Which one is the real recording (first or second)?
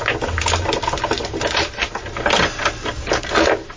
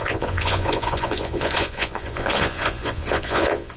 first